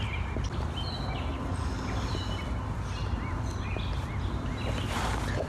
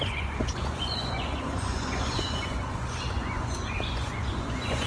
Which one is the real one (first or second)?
first